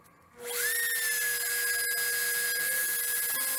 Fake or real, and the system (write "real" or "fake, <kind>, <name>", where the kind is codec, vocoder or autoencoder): real